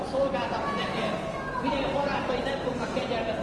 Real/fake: real